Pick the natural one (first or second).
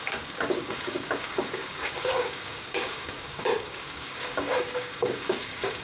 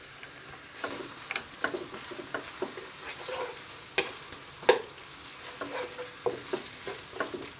second